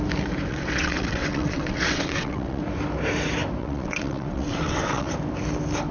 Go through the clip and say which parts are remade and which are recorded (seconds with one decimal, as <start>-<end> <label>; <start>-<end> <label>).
0.0-0.5 recorded; 0.5-2.6 remade; 2.6-3.6 recorded; 3.6-5.1 remade; 5.1-5.9 recorded